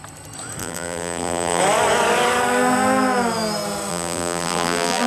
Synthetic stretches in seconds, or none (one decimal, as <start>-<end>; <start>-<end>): 0.6-1.6; 3.9-5.1